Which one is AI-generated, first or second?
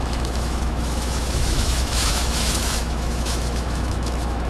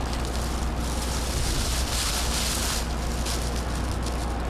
first